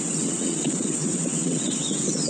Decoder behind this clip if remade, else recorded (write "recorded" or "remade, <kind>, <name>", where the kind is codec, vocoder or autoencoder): remade, vocoder, WaveNeXt